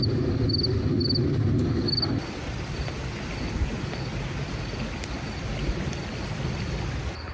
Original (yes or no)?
yes